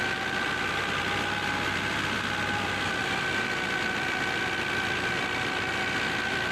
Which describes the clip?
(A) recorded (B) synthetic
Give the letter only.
B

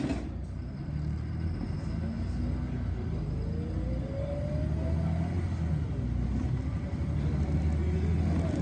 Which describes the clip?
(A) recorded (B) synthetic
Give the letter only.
A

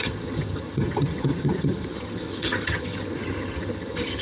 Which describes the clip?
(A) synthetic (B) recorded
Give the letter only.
A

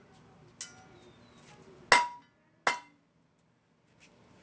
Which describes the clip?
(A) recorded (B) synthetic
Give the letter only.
A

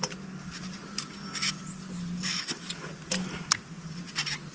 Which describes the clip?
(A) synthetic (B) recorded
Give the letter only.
B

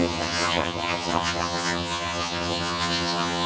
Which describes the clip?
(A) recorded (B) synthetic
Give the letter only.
B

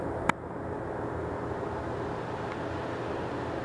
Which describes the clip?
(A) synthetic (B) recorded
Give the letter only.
B